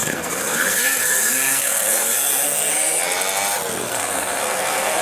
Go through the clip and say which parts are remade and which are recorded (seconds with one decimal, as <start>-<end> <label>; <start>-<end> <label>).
0.0-3.0 remade; 3.0-3.8 recorded; 3.8-5.0 remade